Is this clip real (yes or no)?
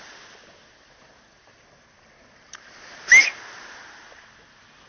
yes